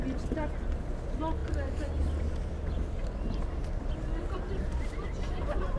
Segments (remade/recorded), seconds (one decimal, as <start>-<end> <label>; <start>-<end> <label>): 0.0-5.8 recorded